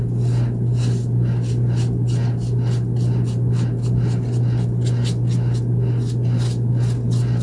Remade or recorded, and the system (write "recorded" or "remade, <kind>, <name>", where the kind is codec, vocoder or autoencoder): recorded